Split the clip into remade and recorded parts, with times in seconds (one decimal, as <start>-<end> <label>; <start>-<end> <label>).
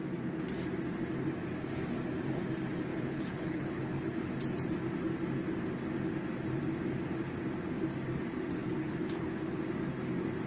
0.0-2.9 recorded; 2.9-4.3 remade; 4.3-8.6 recorded; 8.6-9.6 remade; 9.6-10.5 recorded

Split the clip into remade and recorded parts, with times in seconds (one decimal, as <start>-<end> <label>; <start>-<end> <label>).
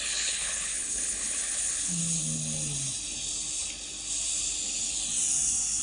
0.0-2.0 remade; 2.0-5.8 recorded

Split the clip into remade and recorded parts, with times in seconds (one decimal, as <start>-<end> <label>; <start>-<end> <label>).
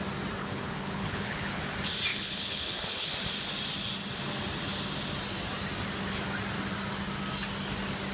0.0-0.4 recorded; 0.4-1.6 remade; 1.6-2.1 recorded; 2.1-3.1 remade; 3.1-8.1 recorded